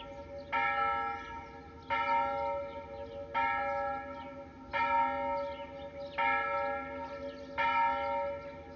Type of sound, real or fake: real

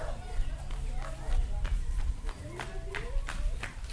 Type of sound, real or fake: real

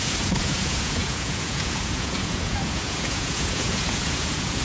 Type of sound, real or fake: fake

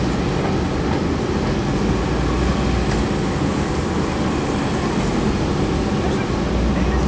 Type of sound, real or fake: real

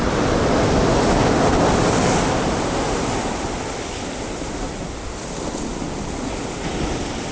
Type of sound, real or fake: real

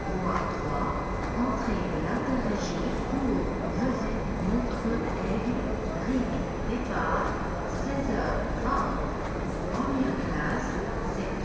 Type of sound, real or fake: real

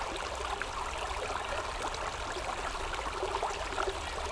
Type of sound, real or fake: real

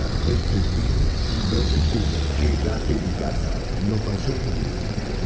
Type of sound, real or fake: fake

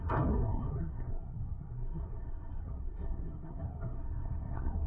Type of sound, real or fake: fake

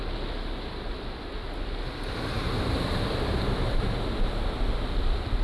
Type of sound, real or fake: real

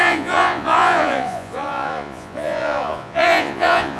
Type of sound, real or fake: fake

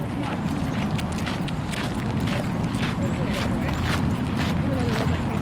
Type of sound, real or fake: real